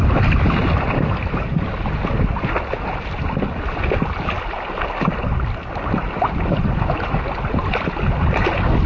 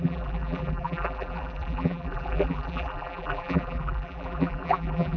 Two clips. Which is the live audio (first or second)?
first